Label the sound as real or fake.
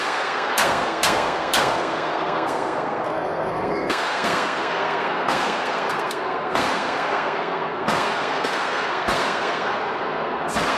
fake